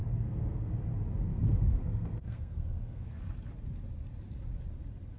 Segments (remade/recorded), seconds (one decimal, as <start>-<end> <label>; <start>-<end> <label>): 0.0-0.7 remade; 0.7-1.3 recorded; 1.3-3.2 remade; 3.2-5.2 recorded